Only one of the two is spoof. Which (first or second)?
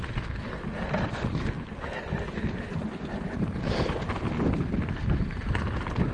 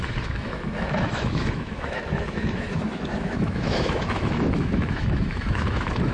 second